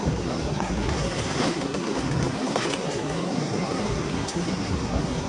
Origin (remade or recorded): remade